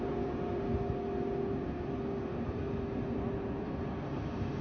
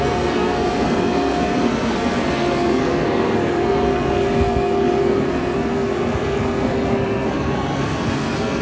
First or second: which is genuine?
first